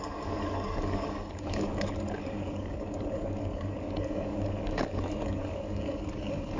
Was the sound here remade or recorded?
remade